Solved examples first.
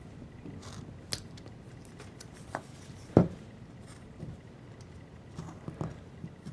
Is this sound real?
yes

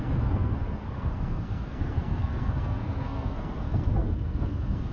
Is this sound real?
no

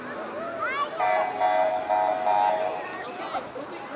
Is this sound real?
yes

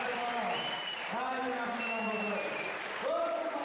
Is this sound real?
yes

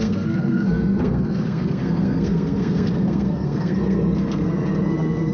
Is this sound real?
no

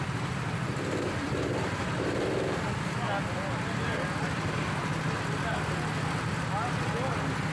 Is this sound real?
yes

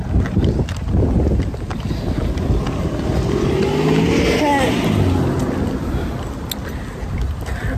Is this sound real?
yes